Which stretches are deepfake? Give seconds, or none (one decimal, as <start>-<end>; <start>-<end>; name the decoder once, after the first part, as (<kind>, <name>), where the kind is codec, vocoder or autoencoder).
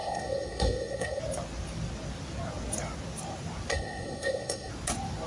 0.0-1.2 (codec, SNAC); 3.7-4.7